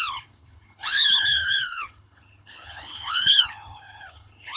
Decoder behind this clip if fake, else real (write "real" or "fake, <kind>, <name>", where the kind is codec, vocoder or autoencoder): fake, codec, HILCodec